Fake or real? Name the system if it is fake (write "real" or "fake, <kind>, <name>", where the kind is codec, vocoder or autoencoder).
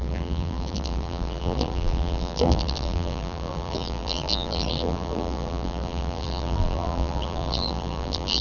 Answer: fake, vocoder, BigVGAN v2